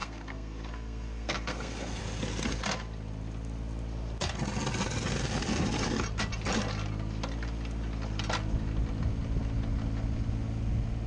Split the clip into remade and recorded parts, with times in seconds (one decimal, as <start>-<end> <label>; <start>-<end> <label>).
0.0-2.0 remade; 2.0-11.1 recorded